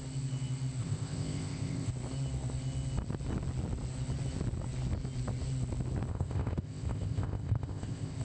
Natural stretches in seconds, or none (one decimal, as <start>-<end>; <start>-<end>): 0.0-0.8; 1.9-6.1